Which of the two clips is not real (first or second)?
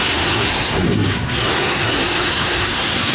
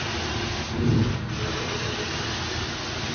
first